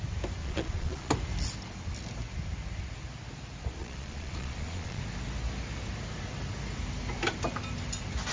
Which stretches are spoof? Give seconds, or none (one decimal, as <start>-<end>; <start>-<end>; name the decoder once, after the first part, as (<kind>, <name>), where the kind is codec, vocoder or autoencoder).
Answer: 0.4-1.1 (vocoder, Vocos); 3.8-5.0